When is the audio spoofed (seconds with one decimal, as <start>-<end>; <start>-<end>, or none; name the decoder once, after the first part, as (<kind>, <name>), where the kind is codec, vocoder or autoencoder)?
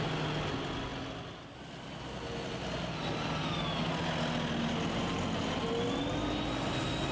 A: none